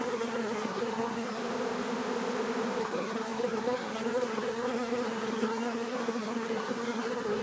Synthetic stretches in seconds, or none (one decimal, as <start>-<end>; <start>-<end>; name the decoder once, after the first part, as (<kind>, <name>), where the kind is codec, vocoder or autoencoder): 0.0-1.4 (codec, SNAC); 2.8-7.4